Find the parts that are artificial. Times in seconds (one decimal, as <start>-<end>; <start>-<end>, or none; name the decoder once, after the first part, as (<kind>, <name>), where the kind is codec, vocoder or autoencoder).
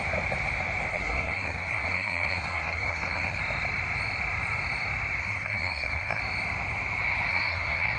0.9-3.4 (codec, SNAC); 5.2-6.2; 7.3-8.0